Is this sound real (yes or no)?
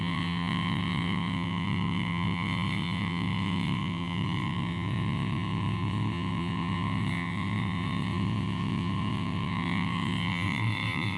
no